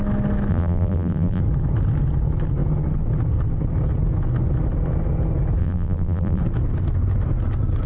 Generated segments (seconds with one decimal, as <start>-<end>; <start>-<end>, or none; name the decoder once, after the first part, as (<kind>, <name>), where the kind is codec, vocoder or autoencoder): 0.5-1.4 (vocoder, BigVGAN v2); 5.6-6.4